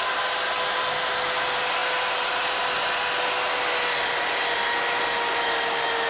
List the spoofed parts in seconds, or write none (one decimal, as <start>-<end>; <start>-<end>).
none